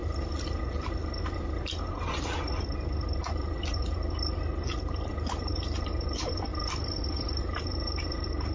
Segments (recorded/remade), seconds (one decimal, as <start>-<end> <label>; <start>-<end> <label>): 0.0-5.1 recorded; 5.1-6.5 remade; 6.5-7.4 recorded; 7.4-8.5 remade